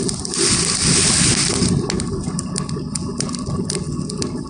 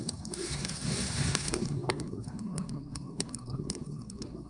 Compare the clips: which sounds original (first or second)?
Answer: first